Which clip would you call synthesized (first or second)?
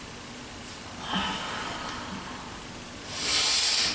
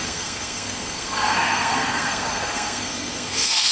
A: second